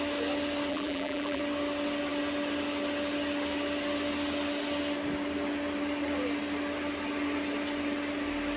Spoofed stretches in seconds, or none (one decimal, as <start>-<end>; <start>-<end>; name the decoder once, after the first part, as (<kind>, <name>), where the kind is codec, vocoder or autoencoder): 0.7-1.4 (vocoder, BigVGAN v2)